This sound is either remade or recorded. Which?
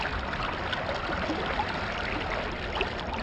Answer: recorded